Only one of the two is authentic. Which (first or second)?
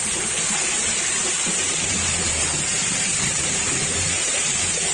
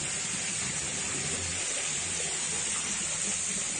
second